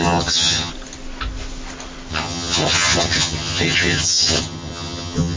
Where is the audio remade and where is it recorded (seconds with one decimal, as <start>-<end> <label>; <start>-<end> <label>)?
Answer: 0.0-0.7 remade; 0.7-2.1 recorded; 2.1-5.4 remade